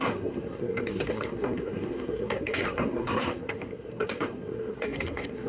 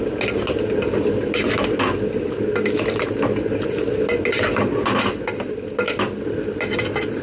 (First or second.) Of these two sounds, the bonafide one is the second